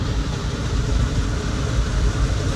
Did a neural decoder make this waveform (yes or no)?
no